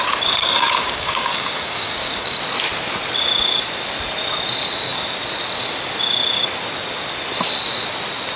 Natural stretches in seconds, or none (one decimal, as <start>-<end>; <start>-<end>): 0.0-0.4; 2.4-8.4